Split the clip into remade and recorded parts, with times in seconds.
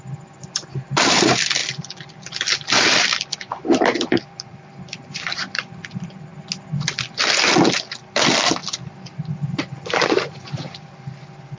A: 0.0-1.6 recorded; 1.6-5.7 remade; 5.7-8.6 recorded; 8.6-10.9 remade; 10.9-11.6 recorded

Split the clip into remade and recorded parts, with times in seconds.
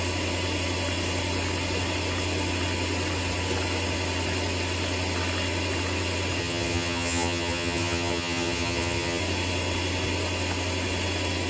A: 0.0-6.4 recorded; 6.4-9.2 remade; 9.2-11.5 recorded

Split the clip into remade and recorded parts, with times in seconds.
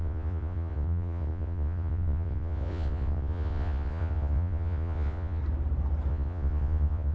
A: 0.0-5.4 remade; 5.4-6.1 recorded; 6.1-7.1 remade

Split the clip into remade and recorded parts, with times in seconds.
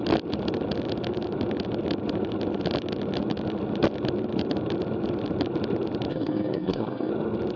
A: 0.0-6.1 recorded; 6.1-7.1 remade; 7.1-7.6 recorded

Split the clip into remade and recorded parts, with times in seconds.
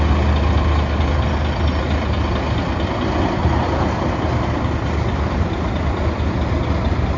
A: 0.0-3.4 recorded; 3.4-5.9 remade; 5.9-7.2 recorded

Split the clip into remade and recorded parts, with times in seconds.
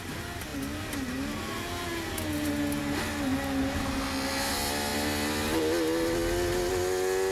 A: 0.0-7.3 recorded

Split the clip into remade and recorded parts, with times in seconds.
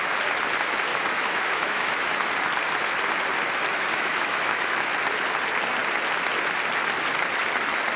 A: 0.0-0.9 recorded; 0.9-2.3 remade; 2.3-3.9 recorded; 3.9-4.9 remade; 4.9-8.0 recorded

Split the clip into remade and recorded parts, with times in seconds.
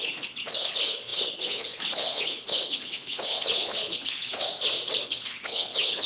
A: 0.0-4.4 remade; 4.4-5.0 recorded; 5.0-6.1 remade